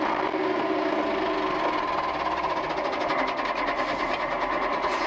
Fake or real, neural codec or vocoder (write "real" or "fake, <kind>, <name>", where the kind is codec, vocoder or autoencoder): real